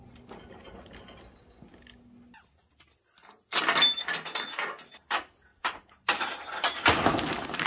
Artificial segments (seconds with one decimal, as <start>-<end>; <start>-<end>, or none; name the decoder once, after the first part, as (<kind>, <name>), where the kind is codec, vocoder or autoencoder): 5.5-7.7 (vocoder, BigVGAN v2)